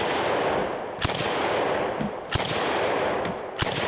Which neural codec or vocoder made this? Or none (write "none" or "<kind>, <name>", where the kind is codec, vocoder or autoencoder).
none